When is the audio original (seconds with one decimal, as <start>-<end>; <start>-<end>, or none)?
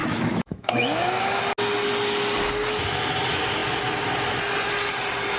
1.4-5.4